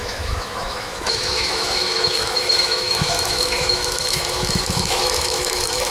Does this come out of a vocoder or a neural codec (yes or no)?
yes